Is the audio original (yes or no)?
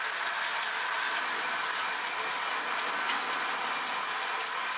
yes